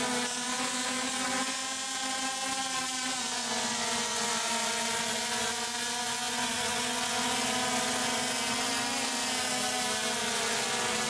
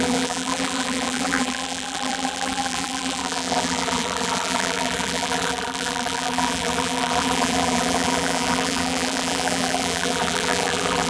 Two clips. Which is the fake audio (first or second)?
second